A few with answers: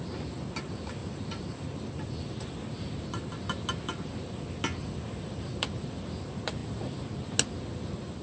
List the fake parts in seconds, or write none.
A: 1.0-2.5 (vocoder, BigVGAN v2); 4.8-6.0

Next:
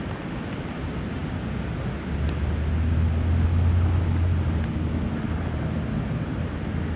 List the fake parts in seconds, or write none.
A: none

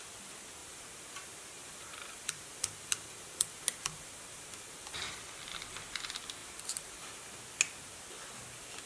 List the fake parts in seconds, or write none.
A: 0.6-5.1 (vocoder, BigVGAN v2); 6.4-7.4

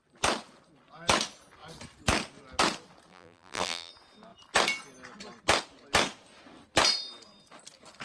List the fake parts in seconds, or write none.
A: 3.1-3.9 (vocoder, BigVGAN v2)

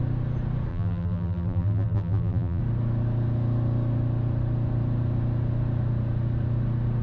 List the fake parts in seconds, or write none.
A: 0.7-2.6 (vocoder, BigVGAN v2)

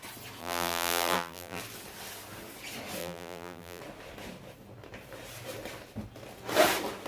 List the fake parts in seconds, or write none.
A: 0.4-1.6 (vocoder, BigVGAN v2); 3.0-3.8

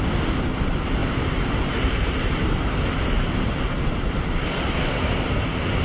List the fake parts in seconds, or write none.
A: 1.0-4.2 (vocoder, BigVGAN v2)

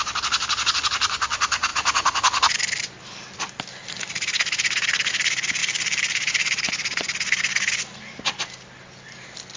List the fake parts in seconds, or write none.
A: 5.6-6.7 (vocoder, BigVGAN v2)